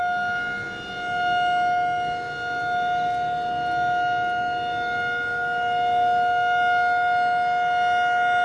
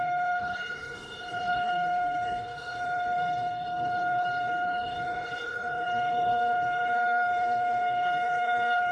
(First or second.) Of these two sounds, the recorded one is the first